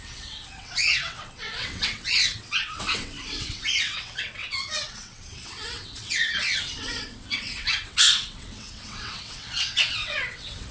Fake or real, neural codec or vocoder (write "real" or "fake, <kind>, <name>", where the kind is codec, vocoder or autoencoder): fake, vocoder, WaveNeXt